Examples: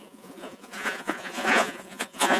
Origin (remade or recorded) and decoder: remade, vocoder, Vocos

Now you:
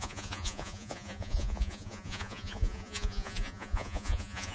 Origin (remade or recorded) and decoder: remade, vocoder, Vocos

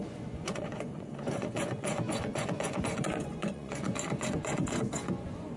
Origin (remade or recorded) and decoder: remade, vocoder, Vocos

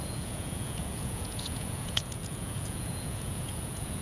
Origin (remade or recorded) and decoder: remade, vocoder, Vocos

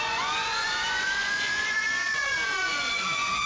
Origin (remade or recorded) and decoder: remade, vocoder, Vocos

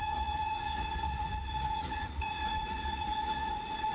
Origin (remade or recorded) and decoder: remade, vocoder, Vocos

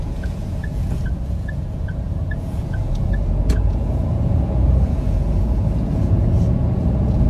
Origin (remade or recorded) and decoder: remade, vocoder, Vocos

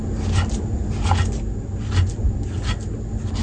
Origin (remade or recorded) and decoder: recorded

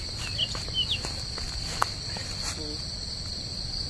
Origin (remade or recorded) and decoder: recorded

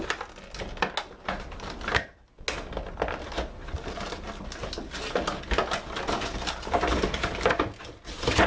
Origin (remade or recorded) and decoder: recorded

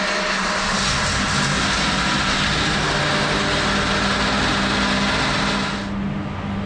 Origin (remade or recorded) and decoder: recorded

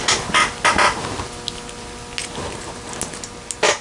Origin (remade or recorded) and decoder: recorded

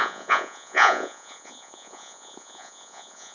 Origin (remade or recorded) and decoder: remade, vocoder, Vocos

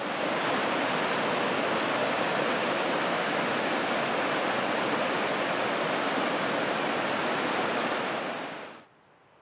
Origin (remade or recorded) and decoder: recorded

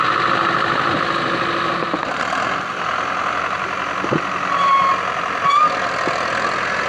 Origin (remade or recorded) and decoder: recorded